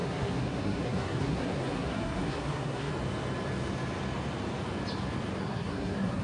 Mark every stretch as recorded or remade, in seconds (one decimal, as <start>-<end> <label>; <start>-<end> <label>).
0.0-2.9 remade; 2.9-5.4 recorded; 5.4-6.2 remade